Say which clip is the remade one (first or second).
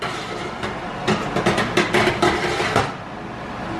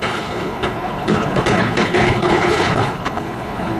second